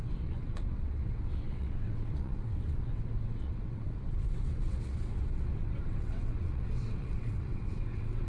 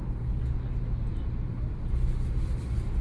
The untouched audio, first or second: second